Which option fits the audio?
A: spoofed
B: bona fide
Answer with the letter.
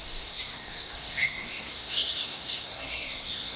A